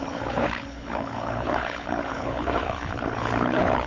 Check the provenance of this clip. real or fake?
fake